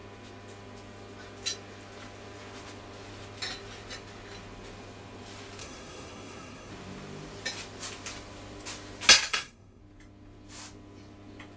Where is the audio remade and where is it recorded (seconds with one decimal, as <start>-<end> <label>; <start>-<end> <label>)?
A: 0.0-5.6 recorded; 5.6-6.7 remade; 6.7-9.3 recorded; 9.3-9.8 remade; 9.8-11.6 recorded